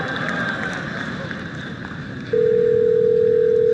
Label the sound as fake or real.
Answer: real